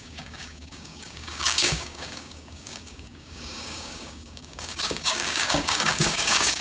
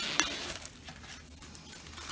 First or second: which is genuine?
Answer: second